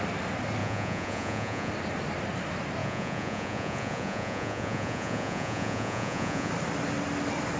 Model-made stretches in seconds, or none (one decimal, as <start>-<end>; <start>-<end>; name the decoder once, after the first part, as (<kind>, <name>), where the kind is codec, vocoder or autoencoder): 0.6-1.7 (vocoder, Vocos); 2.8-6.5